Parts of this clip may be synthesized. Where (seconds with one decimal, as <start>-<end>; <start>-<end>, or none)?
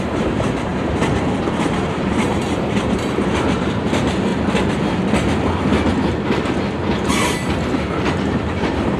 0.0-0.7; 1.5-4.3; 7.7-9.0